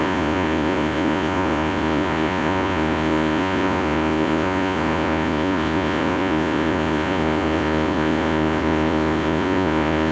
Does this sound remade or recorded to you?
remade